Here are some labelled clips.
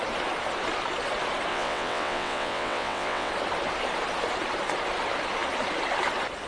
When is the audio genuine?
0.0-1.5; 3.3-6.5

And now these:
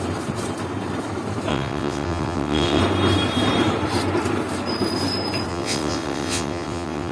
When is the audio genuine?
0.0-1.5; 2.8-5.5